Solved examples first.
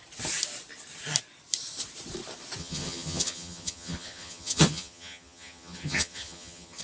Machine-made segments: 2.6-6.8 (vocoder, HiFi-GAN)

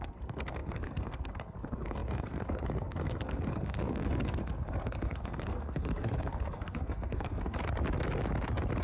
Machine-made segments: 0.0-7.6 (codec, SNAC)

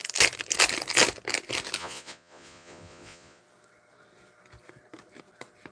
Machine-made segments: 1.8-3.4 (vocoder, Vocos)

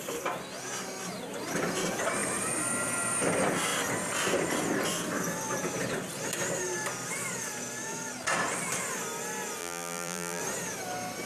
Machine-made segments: 9.6-10.4 (vocoder, BigVGAN v2)

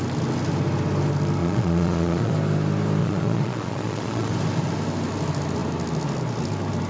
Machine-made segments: 1.4-2.3 (vocoder, Vocos); 3.0-4.3

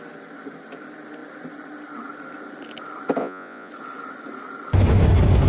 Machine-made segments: 3.2-3.7 (vocoder, Vocos)

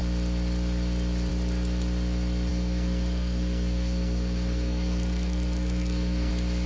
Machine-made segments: 2.5-6.3 (codec, SNAC)